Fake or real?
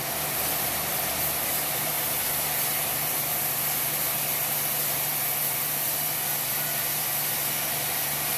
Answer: real